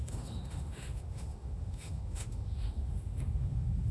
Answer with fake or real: fake